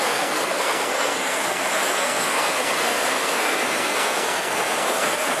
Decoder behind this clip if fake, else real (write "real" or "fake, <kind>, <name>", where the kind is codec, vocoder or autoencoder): fake, codec, SNAC